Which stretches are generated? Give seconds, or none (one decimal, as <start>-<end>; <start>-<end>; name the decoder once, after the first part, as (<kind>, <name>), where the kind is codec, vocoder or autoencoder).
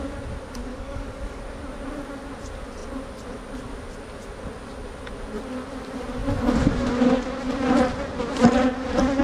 0.7-1.4 (codec, DAC)